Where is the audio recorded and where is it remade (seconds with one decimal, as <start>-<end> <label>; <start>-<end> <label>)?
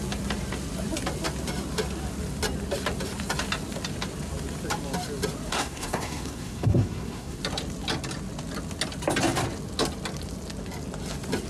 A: 0.0-5.5 recorded; 5.5-7.4 remade; 7.4-11.5 recorded